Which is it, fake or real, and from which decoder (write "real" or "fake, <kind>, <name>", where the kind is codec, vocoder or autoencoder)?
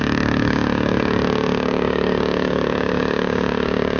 fake, codec, DAC